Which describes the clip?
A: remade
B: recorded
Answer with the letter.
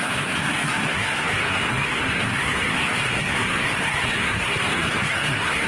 A